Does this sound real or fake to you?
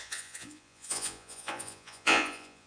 fake